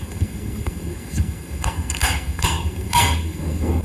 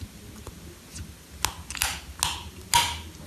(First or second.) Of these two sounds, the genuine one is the second